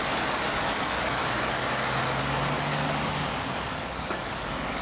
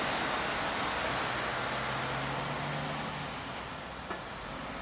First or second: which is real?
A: second